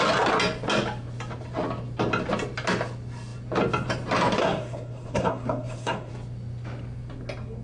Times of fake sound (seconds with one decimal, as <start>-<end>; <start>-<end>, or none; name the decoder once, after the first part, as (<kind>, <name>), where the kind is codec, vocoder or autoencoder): 4.4-6.1 (codec, SNAC)